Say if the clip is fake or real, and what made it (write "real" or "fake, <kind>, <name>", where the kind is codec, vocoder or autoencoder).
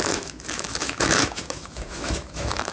fake, autoencoder, DAC-VAE